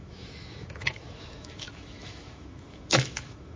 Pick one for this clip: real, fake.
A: fake